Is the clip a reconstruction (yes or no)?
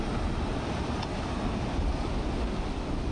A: no